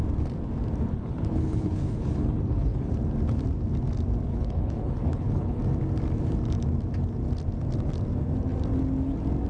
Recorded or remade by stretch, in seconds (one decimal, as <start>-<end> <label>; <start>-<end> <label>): 0.0-0.9 recorded; 0.9-2.9 remade; 2.9-4.3 recorded; 4.3-5.6 remade; 5.6-9.5 recorded